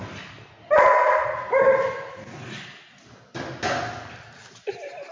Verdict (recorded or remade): recorded